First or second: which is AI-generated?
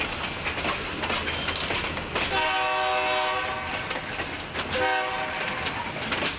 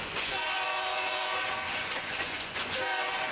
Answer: second